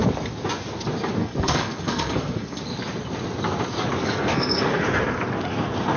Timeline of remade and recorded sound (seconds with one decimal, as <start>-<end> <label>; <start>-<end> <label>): 0.0-1.2 recorded; 1.2-2.6 remade; 2.6-4.0 recorded; 4.0-4.8 remade; 4.8-6.0 recorded